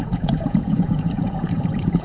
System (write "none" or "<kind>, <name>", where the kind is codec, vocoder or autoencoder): vocoder, Vocos